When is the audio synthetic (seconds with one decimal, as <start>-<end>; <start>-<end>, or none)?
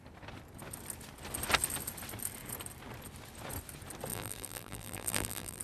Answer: 4.1-5.6